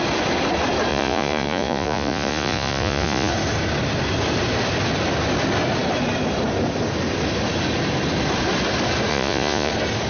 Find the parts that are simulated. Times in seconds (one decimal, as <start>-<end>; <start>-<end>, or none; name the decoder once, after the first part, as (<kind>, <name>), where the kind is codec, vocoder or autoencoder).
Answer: 0.9-3.3 (vocoder, Vocos); 9.1-9.7